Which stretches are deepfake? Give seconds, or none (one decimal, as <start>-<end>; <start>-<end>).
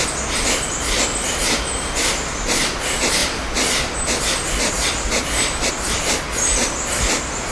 none